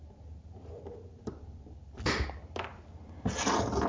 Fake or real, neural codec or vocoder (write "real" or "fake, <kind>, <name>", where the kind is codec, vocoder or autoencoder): real